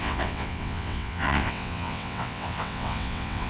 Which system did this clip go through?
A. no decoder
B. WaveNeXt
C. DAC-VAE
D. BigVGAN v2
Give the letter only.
B